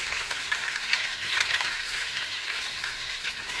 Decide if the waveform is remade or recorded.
remade